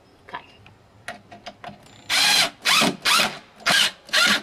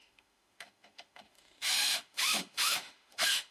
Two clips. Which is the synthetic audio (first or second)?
second